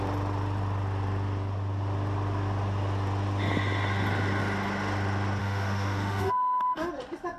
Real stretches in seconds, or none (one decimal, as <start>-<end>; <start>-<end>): 0.0-5.4; 6.9-7.4